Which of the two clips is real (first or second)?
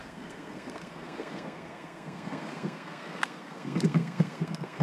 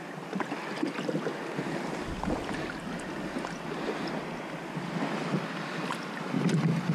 second